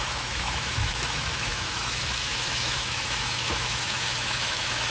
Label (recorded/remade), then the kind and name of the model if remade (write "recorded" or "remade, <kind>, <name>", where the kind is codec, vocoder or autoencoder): remade, autoencoder, DAC-VAE